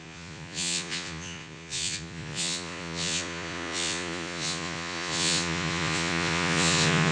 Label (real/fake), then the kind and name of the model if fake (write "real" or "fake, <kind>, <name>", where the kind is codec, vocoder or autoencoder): fake, vocoder, Vocos